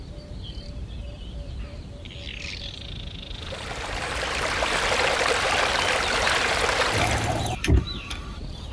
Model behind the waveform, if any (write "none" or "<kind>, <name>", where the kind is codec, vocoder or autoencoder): vocoder, BigVGAN v2